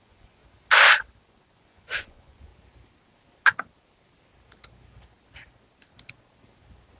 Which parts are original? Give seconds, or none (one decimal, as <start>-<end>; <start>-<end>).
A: 0.4-1.2; 2.5-7.0